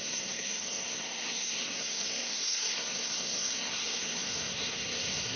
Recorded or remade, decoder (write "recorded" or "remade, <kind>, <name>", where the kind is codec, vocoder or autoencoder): remade, codec, SNAC